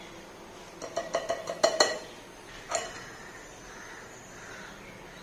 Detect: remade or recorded recorded